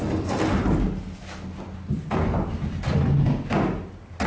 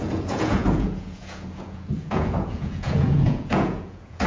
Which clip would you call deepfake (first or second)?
second